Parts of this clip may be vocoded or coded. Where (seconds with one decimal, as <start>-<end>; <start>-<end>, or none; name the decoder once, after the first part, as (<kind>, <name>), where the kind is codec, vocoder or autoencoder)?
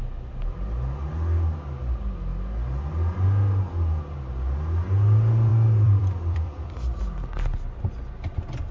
5.5-7.0 (vocoder, BigVGAN v2)